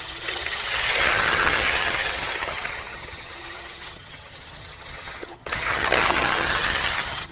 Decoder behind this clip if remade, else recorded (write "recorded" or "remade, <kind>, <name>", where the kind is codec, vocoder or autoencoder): remade, vocoder, HiFi-GAN